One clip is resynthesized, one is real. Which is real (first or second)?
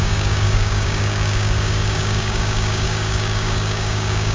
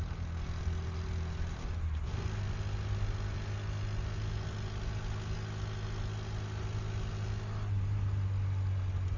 second